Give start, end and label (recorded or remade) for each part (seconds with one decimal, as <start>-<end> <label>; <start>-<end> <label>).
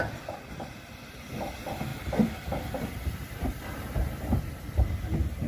0.0-5.5 recorded